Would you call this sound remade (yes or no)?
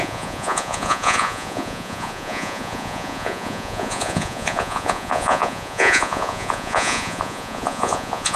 yes